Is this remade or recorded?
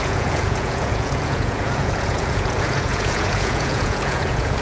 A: remade